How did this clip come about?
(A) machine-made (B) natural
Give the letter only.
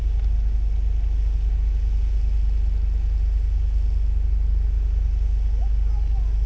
B